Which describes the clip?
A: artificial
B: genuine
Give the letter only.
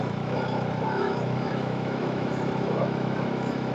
A